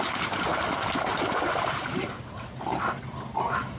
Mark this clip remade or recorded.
remade